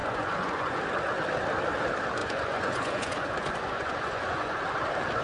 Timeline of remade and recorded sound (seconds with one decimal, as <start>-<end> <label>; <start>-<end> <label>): 0.0-0.8 remade; 0.8-2.2 recorded; 2.2-4.6 remade; 4.6-5.2 recorded